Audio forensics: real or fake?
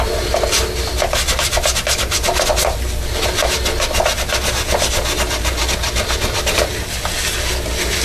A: real